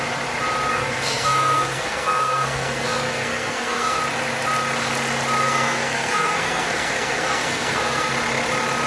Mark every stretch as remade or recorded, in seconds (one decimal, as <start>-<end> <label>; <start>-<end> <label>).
0.0-0.7 recorded; 0.7-4.0 remade; 4.0-5.4 recorded; 5.4-8.1 remade; 8.1-8.9 recorded

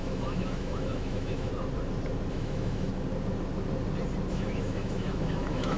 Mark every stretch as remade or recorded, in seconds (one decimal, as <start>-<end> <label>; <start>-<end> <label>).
0.0-1.5 remade; 1.5-2.3 recorded; 2.3-2.9 remade; 2.9-4.3 recorded; 4.3-5.8 remade

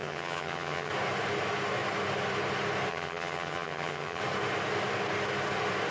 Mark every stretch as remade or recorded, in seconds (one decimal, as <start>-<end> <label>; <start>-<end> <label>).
0.0-0.9 remade; 0.9-2.9 recorded; 2.9-4.2 remade; 4.2-5.9 recorded

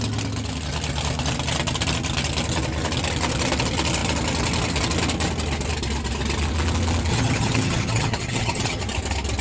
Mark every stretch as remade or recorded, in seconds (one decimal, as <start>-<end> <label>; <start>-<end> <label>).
0.0-7.1 recorded; 7.1-8.8 remade; 8.8-9.4 recorded

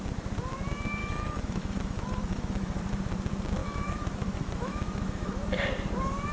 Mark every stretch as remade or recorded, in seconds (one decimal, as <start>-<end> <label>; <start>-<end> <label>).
0.0-1.0 recorded; 1.0-2.8 remade; 2.8-3.6 recorded; 3.6-5.5 remade; 5.5-6.3 recorded

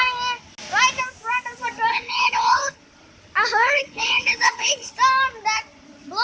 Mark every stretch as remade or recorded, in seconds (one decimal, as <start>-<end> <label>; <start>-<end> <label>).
0.0-1.9 recorded; 1.9-2.8 remade; 2.8-3.6 recorded; 3.6-4.9 remade; 4.9-6.2 recorded

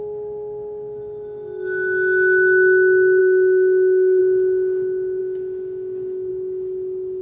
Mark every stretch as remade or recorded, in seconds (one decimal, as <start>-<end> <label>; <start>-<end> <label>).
0.0-3.2 recorded; 3.2-4.2 remade; 4.2-7.2 recorded

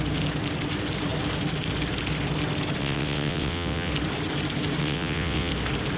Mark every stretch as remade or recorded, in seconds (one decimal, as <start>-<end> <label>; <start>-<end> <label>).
0.0-2.8 recorded; 2.8-3.9 remade; 3.9-4.8 recorded; 4.8-5.5 remade; 5.5-6.0 recorded